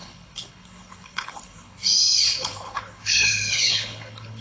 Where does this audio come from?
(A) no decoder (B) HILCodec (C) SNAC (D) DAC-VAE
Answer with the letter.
B